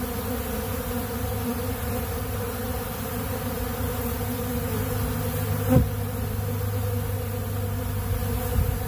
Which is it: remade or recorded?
recorded